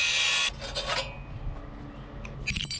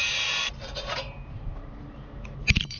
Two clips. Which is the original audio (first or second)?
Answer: first